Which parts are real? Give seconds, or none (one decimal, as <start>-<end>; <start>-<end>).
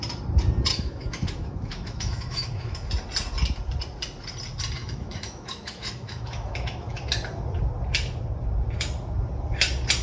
0.0-0.7; 2.9-4.8; 7.0-10.0